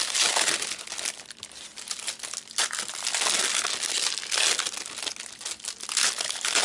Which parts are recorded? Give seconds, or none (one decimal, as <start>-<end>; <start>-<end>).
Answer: 0.0-6.6